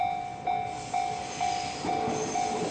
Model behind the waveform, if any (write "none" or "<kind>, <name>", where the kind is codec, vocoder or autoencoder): none